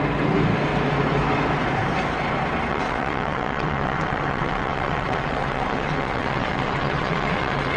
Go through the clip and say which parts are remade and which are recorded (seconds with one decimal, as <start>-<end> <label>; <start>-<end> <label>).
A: 0.0-2.7 recorded; 2.7-7.8 remade